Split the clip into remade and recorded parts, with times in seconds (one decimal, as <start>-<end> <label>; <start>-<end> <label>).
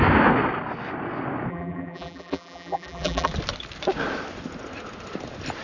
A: 0.0-1.5 recorded; 1.5-3.3 remade; 3.3-5.6 recorded